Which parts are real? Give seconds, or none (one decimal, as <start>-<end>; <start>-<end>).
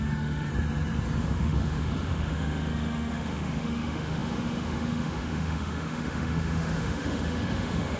0.5-1.2